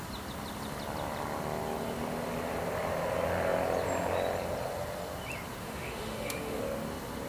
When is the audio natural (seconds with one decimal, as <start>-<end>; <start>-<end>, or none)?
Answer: 0.0-5.6; 6.6-7.3